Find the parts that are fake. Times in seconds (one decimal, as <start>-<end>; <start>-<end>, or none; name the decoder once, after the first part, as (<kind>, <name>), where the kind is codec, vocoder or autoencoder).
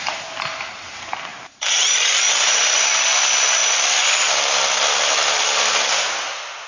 1.3-3.0 (vocoder, BigVGAN v2)